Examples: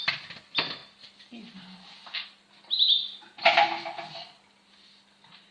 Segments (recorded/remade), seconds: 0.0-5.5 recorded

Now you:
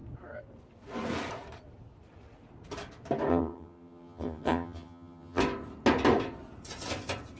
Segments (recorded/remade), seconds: 0.0-3.3 recorded; 3.3-5.4 remade; 5.4-7.4 recorded

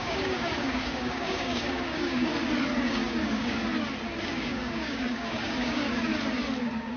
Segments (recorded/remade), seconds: 0.0-2.3 remade; 2.3-2.8 recorded; 2.8-3.6 remade; 3.6-4.2 recorded; 4.2-6.1 remade; 6.1-6.6 recorded; 6.6-7.0 remade

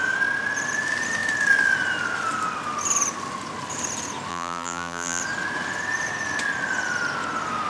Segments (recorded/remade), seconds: 0.0-4.3 recorded; 4.3-5.2 remade; 5.2-7.7 recorded

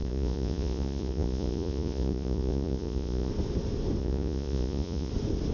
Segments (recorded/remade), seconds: 0.0-3.3 remade; 3.3-4.0 recorded; 4.0-5.1 remade; 5.1-5.5 recorded

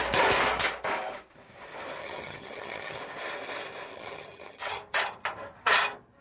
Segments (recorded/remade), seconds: 0.0-2.0 recorded; 2.0-3.0 remade; 3.0-3.9 recorded; 3.9-4.8 remade; 4.8-6.2 recorded

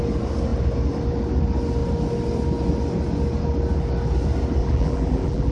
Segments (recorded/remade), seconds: 0.0-4.6 recorded; 4.6-5.5 remade